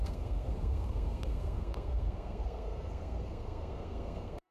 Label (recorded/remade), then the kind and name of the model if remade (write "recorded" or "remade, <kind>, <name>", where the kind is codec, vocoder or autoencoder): remade, codec, SNAC